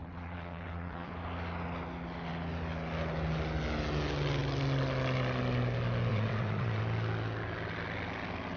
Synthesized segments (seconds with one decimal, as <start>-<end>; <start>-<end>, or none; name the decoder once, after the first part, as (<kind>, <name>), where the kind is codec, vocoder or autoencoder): 0.0-1.1 (vocoder, WaveNeXt); 6.1-6.8